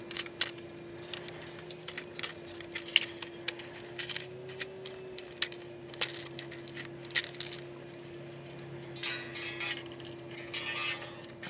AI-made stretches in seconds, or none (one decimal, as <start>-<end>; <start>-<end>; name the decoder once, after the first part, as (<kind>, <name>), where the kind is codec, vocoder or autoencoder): none